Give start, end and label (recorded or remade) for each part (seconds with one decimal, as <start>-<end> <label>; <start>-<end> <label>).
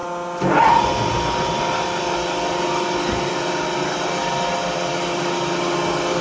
0.0-6.2 recorded